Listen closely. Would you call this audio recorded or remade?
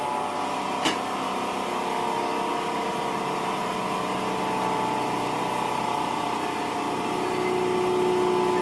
recorded